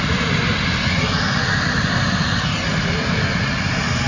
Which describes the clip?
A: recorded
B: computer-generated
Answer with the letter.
A